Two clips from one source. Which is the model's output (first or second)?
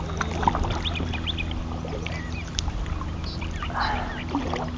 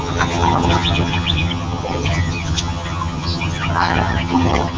second